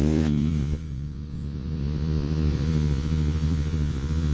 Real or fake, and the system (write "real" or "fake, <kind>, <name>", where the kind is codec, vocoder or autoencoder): fake, vocoder, Vocos